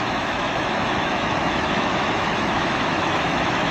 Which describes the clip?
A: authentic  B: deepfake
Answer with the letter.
B